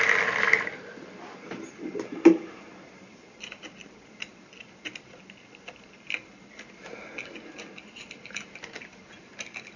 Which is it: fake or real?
real